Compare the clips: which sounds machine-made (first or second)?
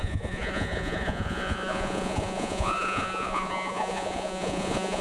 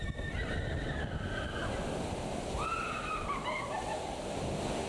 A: first